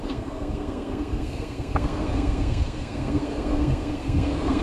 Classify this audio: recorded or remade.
remade